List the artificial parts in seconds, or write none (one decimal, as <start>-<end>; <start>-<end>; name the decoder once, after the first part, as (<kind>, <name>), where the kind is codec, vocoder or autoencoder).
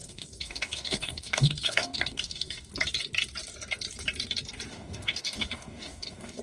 0.0-2.7 (codec, DAC); 4.7-6.4